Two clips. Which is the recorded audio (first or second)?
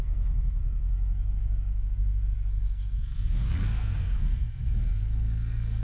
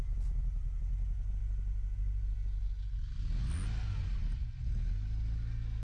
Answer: second